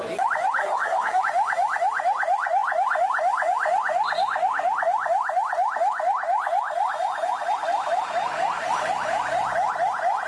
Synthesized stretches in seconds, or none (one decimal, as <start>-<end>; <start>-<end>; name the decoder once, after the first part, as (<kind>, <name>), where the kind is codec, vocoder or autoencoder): 0.6-1.2 (codec, SNAC)